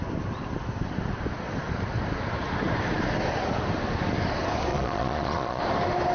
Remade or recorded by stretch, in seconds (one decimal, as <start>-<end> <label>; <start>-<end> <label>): 0.0-4.7 recorded; 4.7-5.6 remade; 5.6-6.1 recorded